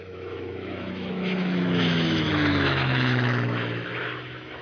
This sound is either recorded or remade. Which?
remade